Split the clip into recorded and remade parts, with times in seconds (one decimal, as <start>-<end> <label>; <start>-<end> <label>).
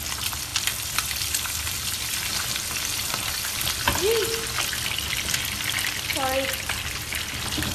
0.0-7.7 recorded